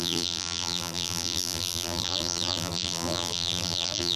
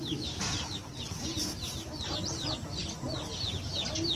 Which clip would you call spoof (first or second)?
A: first